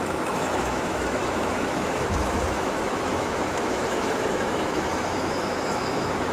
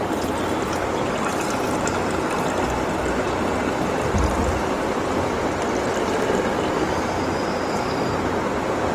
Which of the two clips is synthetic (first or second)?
first